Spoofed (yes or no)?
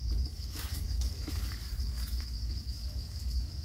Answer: yes